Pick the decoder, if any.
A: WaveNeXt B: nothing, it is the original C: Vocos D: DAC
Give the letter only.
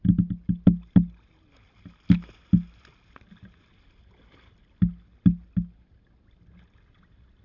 B